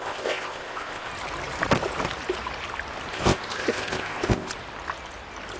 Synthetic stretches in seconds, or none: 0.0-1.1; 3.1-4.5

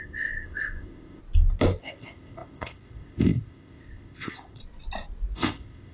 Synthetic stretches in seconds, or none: 0.0-1.2; 1.8-4.6; 5.4-5.9

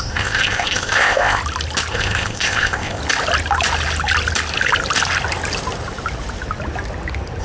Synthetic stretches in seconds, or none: 0.0-1.4; 1.9-3.0

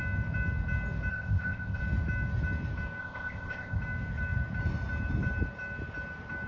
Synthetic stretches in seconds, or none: 1.1-1.8; 3.0-3.8

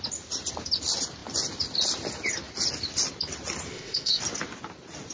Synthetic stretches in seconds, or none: 3.7-4.2

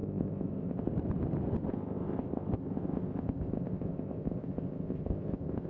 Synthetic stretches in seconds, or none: 0.0-0.9; 1.7-5.7